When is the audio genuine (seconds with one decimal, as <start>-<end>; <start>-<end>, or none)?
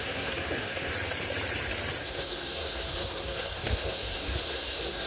0.9-2.0